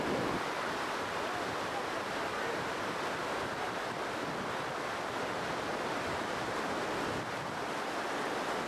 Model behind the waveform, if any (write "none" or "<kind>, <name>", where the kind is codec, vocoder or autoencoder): none